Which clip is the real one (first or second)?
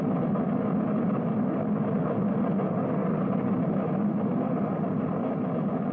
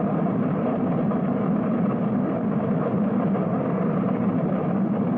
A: first